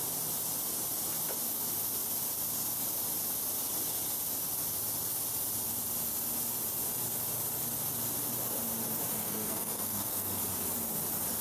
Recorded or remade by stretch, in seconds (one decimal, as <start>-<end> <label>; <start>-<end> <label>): 0.0-9.2 recorded; 9.2-10.4 remade; 10.4-11.4 recorded